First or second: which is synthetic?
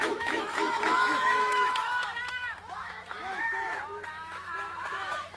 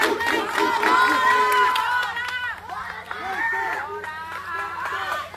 first